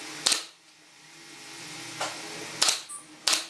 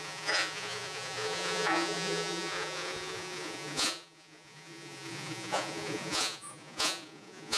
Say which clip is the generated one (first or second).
second